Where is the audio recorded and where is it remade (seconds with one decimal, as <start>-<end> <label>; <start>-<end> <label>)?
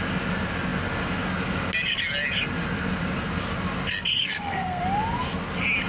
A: 0.0-4.2 recorded; 4.2-4.8 remade; 4.8-5.9 recorded